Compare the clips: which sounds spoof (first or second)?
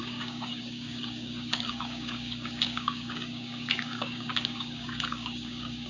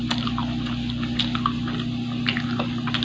first